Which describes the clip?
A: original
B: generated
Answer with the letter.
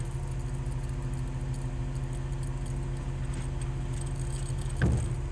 A